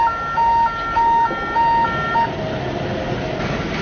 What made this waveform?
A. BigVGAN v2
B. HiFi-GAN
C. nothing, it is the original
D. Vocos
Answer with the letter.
C